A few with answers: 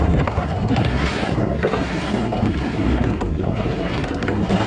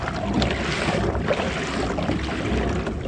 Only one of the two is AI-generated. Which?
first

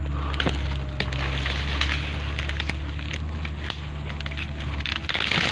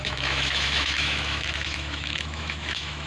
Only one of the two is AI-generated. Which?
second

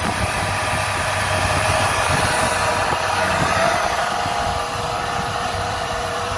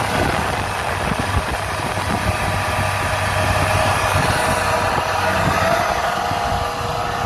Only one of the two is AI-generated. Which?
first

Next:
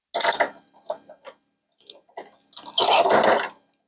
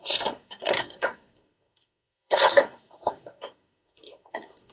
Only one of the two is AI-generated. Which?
second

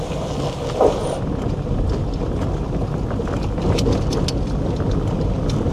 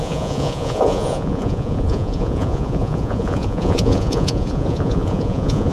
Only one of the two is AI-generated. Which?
second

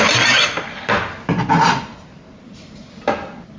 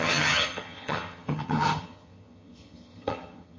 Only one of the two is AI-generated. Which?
second